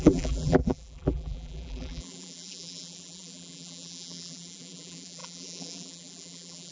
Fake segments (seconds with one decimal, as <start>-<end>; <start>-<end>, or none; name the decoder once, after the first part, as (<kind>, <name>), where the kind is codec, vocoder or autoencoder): 0.0-6.7 (vocoder, BigVGAN v2)